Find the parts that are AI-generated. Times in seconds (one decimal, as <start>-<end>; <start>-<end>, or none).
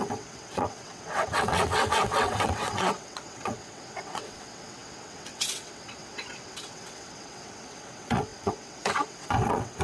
0.0-9.8